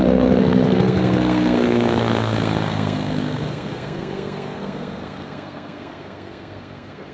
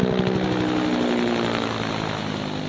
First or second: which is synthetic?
first